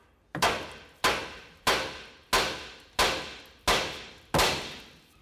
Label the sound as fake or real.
real